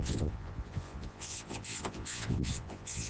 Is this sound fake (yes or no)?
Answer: yes